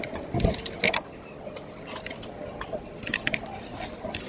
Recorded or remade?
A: recorded